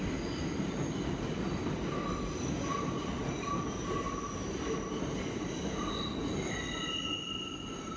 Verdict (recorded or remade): recorded